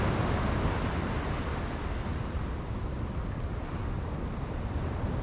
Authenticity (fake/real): real